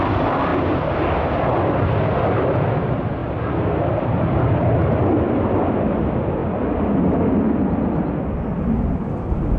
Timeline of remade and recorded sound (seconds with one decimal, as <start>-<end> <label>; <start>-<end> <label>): 0.0-0.5 remade; 0.5-2.8 recorded; 2.8-3.2 remade; 3.2-5.5 recorded; 5.5-6.4 remade; 6.4-7.3 recorded; 7.3-9.6 remade